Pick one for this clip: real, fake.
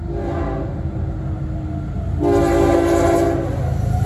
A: real